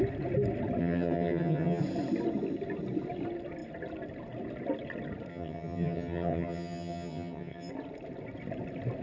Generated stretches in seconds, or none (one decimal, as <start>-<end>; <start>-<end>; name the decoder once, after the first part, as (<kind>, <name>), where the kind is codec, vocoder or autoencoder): 0.8-1.8 (vocoder, HiFi-GAN); 5.3-7.7